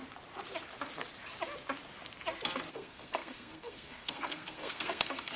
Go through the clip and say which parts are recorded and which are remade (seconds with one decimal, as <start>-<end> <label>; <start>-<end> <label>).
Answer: 0.0-2.7 recorded; 2.7-5.4 remade